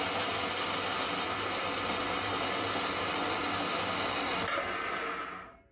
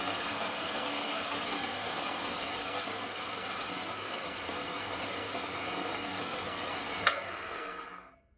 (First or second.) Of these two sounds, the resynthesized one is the second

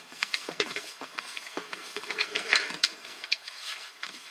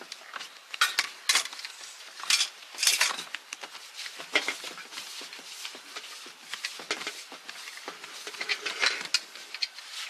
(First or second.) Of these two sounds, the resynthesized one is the first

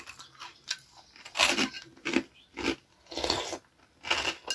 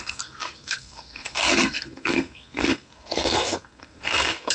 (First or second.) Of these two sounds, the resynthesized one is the second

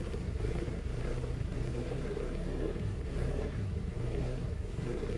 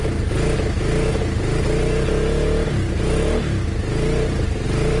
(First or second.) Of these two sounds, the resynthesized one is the first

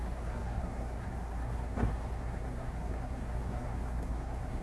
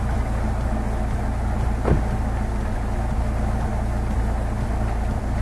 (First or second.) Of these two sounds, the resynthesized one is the first